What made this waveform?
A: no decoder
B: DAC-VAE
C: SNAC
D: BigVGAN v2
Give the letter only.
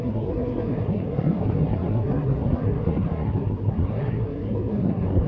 C